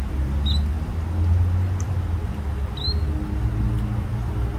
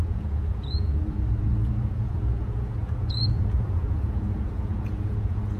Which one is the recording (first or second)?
first